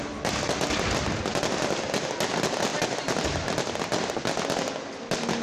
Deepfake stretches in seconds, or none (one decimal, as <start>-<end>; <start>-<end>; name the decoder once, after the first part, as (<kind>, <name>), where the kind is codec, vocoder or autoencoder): none